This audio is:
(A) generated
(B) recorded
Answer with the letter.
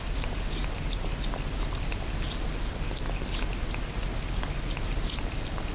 B